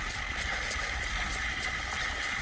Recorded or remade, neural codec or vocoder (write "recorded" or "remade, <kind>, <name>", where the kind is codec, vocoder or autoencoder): recorded